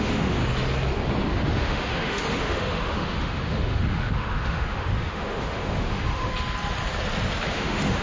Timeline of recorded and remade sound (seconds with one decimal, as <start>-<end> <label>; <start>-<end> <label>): 0.0-0.4 remade; 0.4-1.3 recorded; 1.3-6.3 remade; 6.3-7.5 recorded; 7.5-8.0 remade